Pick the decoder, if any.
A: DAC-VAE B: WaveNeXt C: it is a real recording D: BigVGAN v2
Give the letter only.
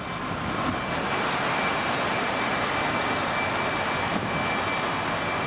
C